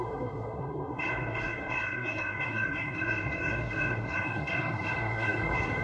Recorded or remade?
remade